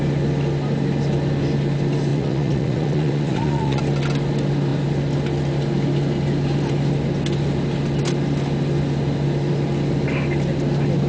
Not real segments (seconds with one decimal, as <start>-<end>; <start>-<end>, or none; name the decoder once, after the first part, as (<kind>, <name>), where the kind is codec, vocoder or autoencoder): 2.1-3.8 (vocoder, Vocos)